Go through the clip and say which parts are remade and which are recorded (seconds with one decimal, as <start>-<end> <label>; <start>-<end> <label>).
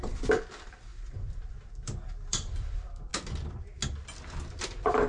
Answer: 0.0-3.1 remade; 3.1-4.6 recorded; 4.6-5.1 remade